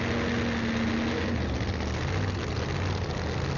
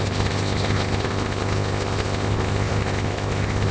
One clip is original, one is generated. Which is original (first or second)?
first